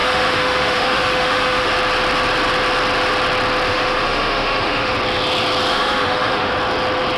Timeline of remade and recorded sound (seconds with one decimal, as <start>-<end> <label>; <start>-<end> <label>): 0.0-1.7 remade; 1.7-3.7 recorded; 3.7-4.9 remade; 4.9-5.7 recorded; 5.7-6.5 remade; 6.5-7.2 recorded